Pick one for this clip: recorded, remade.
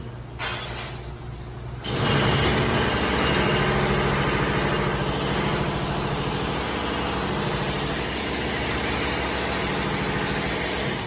recorded